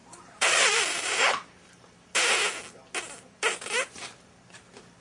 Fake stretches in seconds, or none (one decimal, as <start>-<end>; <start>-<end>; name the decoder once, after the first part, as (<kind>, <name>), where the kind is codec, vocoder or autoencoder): 0.0-1.7 (vocoder, BigVGAN v2)